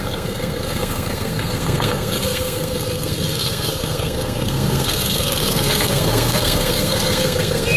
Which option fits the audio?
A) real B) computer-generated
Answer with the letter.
B